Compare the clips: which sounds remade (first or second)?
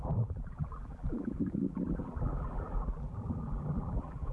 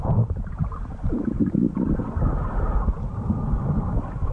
first